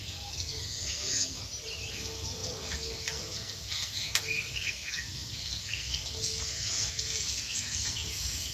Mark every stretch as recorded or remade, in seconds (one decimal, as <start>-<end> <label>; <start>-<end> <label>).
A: 0.0-1.4 remade; 1.4-1.9 recorded; 1.9-8.5 remade